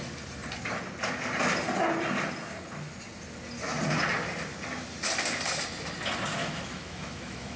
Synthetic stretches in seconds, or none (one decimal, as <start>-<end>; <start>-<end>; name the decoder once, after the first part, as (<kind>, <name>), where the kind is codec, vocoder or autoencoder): 6.4-7.6 (autoencoder, DAC-VAE)